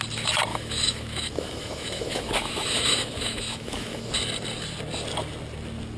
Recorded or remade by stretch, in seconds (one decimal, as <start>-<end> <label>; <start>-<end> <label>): 0.0-0.5 recorded; 0.5-4.1 remade; 4.1-6.0 recorded